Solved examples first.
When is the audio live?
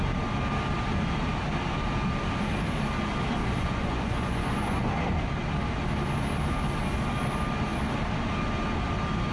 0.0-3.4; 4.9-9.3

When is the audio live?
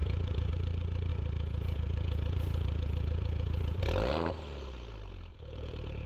0.5-1.1; 3.8-5.3